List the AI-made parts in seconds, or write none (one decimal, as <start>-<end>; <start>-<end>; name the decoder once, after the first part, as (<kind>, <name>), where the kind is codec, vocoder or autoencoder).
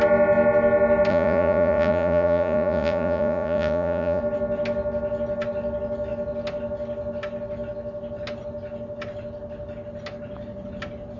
1.1-4.2 (vocoder, Vocos)